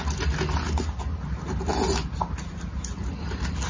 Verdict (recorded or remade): recorded